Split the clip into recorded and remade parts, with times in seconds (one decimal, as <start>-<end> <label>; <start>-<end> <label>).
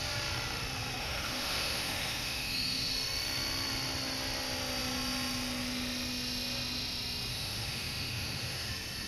0.0-1.0 recorded; 1.0-2.9 remade; 2.9-7.3 recorded; 7.3-8.7 remade; 8.7-9.1 recorded